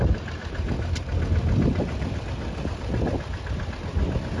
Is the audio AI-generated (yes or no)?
no